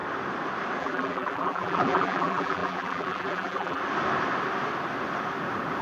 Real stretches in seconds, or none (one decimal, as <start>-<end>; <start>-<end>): 0.0-0.8; 3.8-5.8